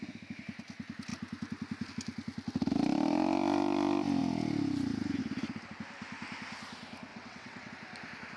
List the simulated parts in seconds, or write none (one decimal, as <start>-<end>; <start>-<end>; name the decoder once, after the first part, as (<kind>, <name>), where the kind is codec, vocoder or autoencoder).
7.1-7.7 (vocoder, WaveNeXt)